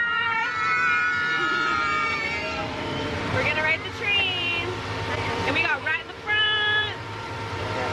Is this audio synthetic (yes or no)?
yes